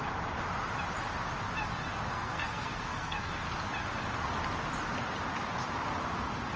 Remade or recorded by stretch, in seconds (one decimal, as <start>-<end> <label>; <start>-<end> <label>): 0.0-2.1 recorded; 2.1-3.3 remade; 3.3-6.6 recorded